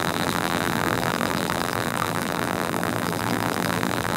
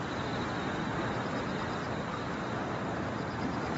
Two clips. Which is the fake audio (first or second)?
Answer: first